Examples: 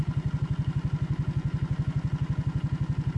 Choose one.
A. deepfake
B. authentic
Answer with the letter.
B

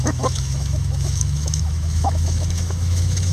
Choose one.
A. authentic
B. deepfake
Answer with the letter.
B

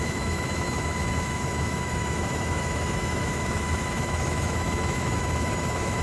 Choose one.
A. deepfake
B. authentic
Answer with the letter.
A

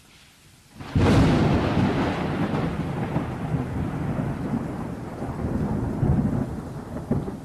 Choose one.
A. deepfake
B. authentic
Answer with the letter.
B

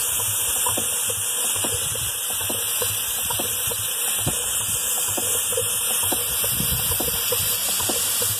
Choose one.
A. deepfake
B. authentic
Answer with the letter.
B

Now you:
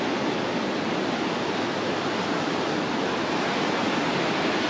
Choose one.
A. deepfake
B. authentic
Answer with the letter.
B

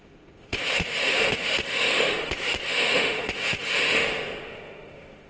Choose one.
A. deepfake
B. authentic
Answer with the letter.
A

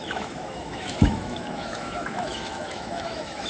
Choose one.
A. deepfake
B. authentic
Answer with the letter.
A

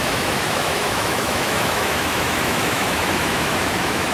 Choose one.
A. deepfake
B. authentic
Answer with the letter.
A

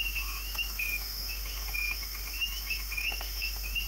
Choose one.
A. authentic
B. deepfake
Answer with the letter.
B